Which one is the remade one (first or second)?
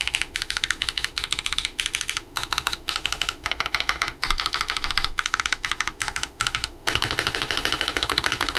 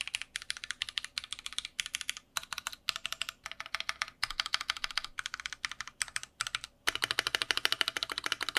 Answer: first